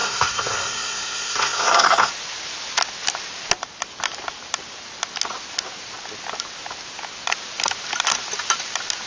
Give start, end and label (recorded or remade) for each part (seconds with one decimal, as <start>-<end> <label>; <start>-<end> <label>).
0.0-2.1 remade; 2.1-9.1 recorded